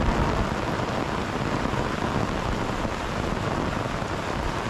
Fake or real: real